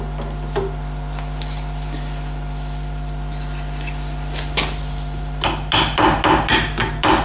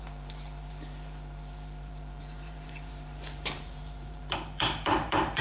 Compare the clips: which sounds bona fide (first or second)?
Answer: first